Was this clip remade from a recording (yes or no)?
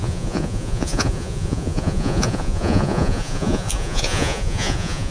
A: yes